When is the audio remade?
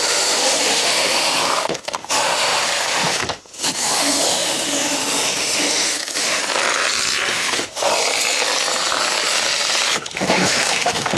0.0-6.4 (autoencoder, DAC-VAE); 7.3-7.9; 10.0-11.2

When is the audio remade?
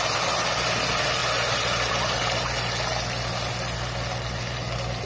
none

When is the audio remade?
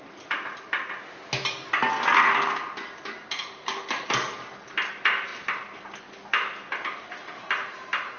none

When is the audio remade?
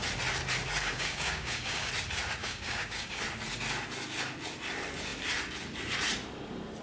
0.8-1.9 (codec, DAC); 2.4-3.2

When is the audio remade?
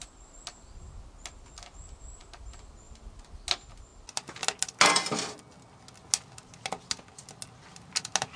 none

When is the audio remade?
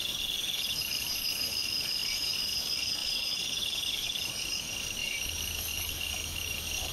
0.0-6.9 (codec, DAC)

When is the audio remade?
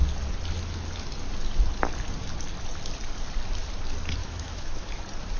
4.2-4.9 (autoencoder, DAC-VAE)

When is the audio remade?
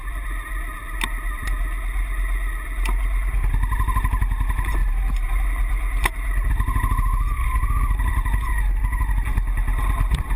4.8-5.5 (vocoder, BigVGAN v2)